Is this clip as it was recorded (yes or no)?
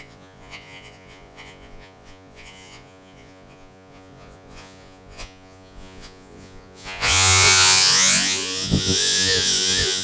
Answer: no